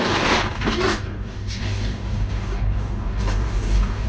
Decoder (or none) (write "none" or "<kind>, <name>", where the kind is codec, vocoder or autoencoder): codec, DAC